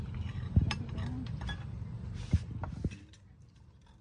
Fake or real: real